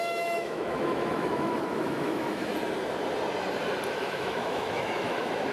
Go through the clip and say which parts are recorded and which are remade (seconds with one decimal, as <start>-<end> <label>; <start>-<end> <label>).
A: 0.0-2.5 remade; 2.5-3.9 recorded; 3.9-5.5 remade